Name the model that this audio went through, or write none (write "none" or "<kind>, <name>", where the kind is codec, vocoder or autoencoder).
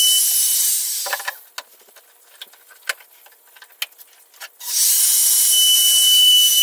none